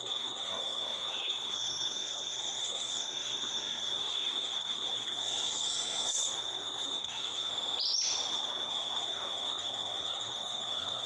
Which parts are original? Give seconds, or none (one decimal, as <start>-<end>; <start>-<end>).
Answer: 7.5-8.3